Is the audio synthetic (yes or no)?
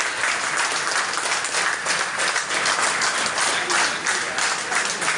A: no